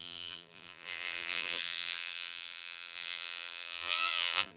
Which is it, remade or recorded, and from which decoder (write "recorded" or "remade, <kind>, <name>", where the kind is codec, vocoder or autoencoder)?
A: remade, vocoder, BigVGAN v2